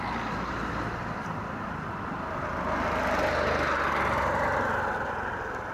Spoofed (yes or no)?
no